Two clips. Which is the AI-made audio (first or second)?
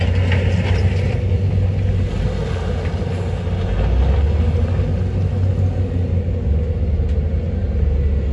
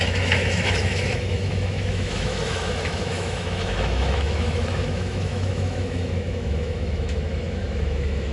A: second